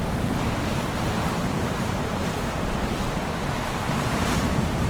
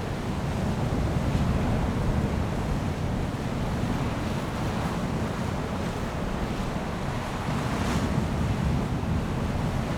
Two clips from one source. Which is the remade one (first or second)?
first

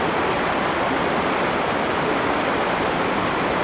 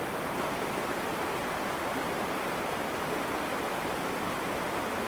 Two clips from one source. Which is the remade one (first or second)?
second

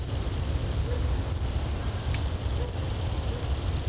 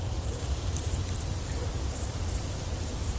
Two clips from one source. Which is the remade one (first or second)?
second